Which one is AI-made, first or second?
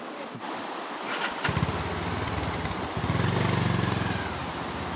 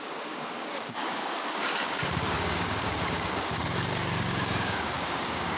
second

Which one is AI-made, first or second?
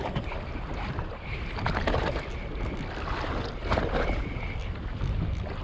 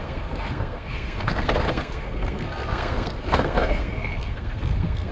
second